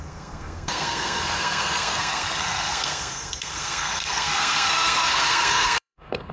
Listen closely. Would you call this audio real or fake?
fake